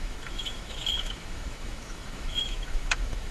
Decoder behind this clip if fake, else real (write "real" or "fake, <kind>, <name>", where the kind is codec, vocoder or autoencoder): fake, autoencoder, DAC-VAE